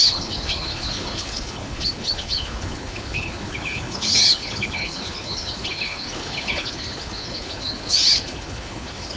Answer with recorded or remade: remade